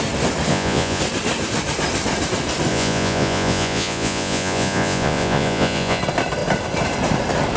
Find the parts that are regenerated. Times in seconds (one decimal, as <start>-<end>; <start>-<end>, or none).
0.5-1.0; 2.7-6.0